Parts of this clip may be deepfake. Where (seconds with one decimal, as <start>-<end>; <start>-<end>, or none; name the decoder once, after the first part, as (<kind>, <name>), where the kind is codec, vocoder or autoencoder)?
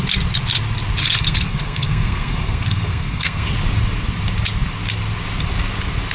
1.0-3.5 (codec, SNAC)